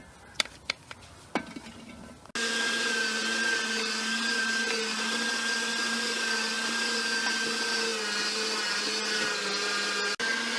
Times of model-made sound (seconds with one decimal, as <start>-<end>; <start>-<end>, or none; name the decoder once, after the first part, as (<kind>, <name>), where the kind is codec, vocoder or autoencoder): none